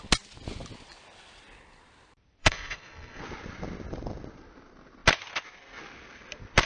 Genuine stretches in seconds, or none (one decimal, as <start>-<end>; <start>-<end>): 0.0-2.4; 3.2-6.7